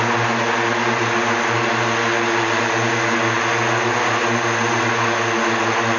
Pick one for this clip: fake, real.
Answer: real